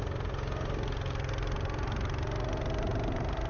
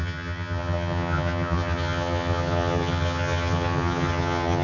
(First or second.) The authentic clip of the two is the first